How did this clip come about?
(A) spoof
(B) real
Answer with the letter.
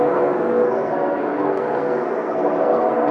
A